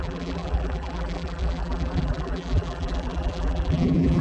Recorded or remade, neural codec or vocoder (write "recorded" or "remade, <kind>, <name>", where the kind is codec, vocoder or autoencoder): remade, vocoder, BigVGAN v2